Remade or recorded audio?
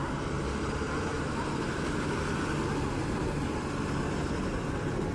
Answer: recorded